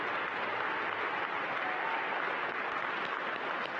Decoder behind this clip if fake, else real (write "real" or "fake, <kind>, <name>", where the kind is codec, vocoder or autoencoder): real